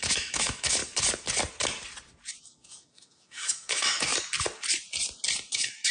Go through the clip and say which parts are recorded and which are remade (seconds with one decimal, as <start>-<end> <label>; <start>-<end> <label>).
0.0-0.8 remade; 0.8-2.4 recorded; 2.4-4.1 remade; 4.1-5.5 recorded; 5.5-5.9 remade